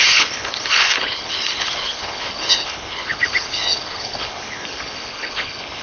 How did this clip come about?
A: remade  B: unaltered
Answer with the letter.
A